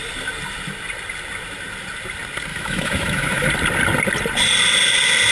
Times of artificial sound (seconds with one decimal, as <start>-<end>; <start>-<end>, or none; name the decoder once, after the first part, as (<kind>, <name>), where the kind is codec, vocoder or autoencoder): 2.5-3.5 (autoencoder, DAC-VAE)